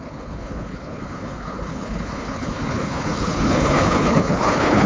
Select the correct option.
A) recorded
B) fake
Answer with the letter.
B